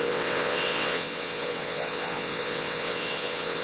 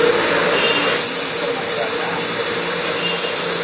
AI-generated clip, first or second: first